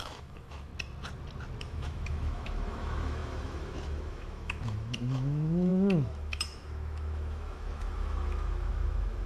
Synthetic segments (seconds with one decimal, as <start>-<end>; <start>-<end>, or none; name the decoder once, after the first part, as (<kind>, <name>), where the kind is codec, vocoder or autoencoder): 0.0-0.7 (autoencoder, DAC-VAE); 1.6-9.3